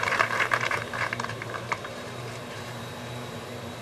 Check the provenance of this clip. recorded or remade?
remade